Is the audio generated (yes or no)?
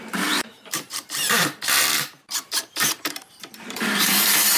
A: yes